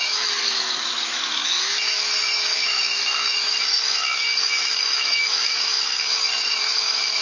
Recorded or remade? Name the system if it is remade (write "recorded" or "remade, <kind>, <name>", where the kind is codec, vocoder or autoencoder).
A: remade, autoencoder, DAC-VAE